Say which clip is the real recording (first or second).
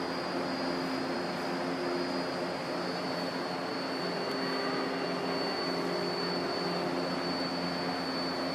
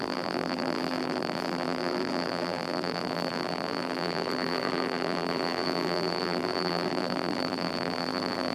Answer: first